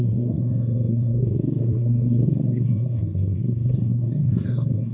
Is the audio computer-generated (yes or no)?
yes